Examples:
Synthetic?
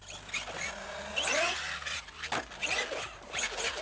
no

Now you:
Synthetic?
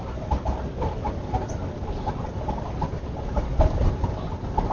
no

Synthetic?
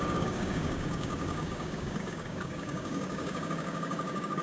yes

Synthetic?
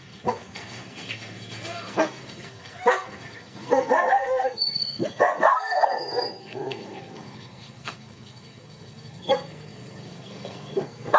yes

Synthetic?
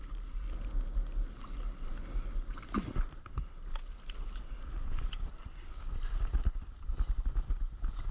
no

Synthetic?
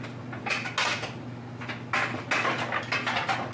no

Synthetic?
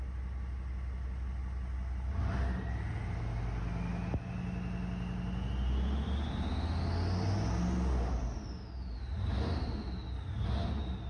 no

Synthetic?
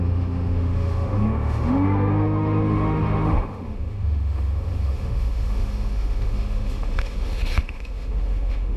yes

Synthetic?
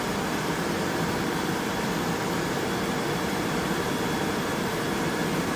yes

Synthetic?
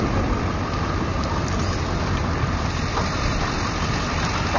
no